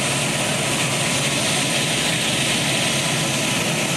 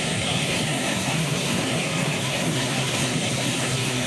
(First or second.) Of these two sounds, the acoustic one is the first